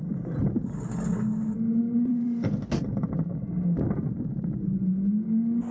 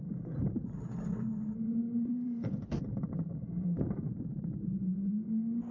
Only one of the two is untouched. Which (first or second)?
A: first